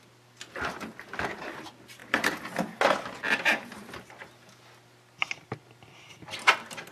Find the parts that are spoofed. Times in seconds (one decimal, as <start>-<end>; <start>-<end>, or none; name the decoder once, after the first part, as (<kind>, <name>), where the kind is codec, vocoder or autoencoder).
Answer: none